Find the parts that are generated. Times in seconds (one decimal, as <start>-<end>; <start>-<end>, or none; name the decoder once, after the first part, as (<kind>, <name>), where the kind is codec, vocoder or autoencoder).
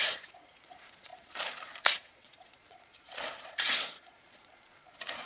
0.0-5.3 (vocoder, Vocos)